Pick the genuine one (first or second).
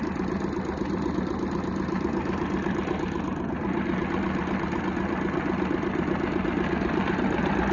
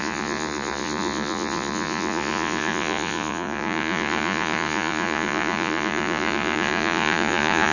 first